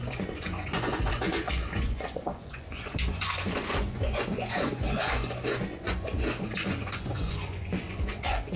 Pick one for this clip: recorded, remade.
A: remade